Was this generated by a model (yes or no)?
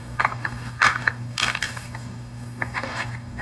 yes